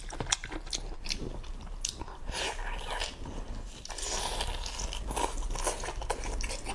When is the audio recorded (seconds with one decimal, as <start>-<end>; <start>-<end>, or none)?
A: 0.0-6.7